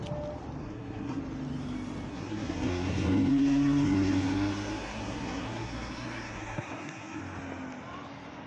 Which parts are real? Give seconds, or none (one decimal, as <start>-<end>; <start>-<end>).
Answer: 0.0-0.6; 1.2-2.1; 7.2-8.5